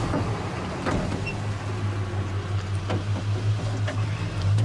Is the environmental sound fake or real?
real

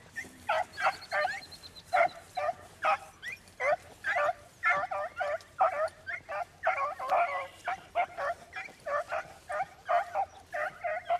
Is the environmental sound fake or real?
real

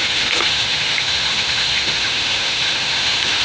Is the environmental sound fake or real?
fake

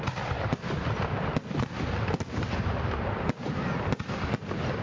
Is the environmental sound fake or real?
real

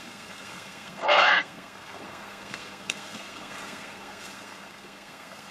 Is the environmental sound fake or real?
fake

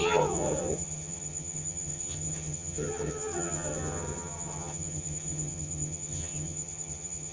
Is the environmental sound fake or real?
fake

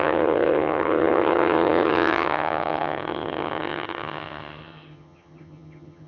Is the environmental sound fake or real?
fake